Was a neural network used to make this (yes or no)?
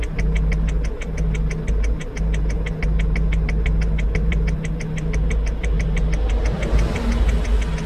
no